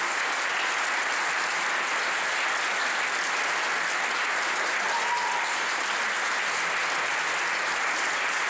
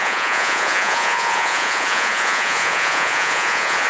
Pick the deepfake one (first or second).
second